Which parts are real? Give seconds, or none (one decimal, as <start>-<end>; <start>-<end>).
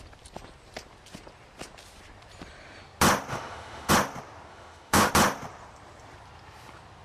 0.0-3.3; 3.9-4.5; 5.1-7.0